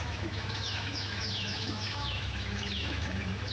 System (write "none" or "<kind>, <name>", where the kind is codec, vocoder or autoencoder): autoencoder, DAC-VAE